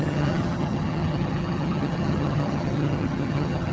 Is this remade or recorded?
remade